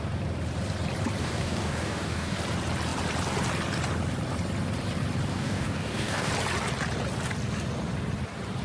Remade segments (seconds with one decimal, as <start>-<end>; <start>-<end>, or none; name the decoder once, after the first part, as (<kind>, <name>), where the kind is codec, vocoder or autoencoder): 1.2-2.4 (codec, DAC); 5.3-6.3